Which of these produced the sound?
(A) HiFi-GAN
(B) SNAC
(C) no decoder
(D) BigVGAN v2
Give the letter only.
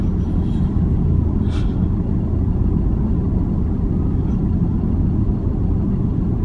C